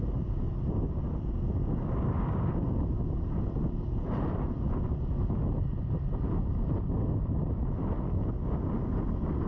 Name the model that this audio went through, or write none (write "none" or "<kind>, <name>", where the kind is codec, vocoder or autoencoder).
none